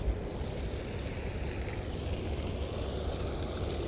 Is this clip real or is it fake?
real